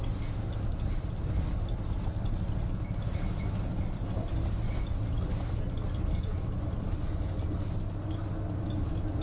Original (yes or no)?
yes